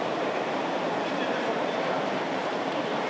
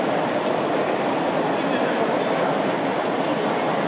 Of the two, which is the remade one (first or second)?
first